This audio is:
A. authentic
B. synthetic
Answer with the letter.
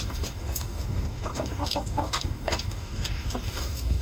B